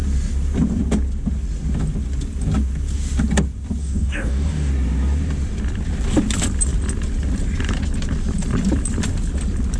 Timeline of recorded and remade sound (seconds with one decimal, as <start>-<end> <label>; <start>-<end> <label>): 0.0-3.8 recorded; 3.8-4.7 remade; 4.7-9.8 recorded